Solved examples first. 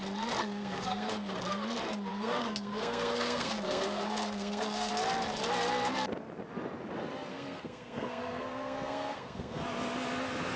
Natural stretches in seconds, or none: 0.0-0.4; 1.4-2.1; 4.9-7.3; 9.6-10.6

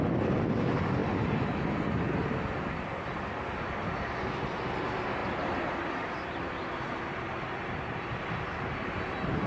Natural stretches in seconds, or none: 0.0-1.0; 3.5-5.2; 8.3-9.5